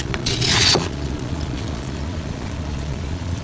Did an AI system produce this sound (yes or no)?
yes